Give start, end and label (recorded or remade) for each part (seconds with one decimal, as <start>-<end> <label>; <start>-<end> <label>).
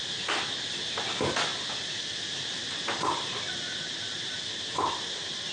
0.0-5.5 recorded